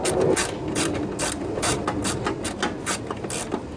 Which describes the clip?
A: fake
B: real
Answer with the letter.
B